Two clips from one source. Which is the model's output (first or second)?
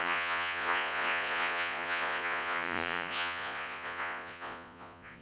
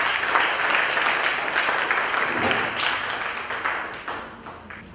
first